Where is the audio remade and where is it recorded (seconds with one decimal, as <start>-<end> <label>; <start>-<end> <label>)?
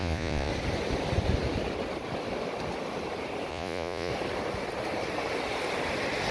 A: 0.0-0.5 remade; 0.5-3.5 recorded; 3.5-4.1 remade; 4.1-6.3 recorded